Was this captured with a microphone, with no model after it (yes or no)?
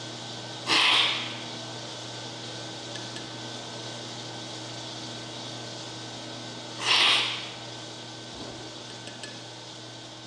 yes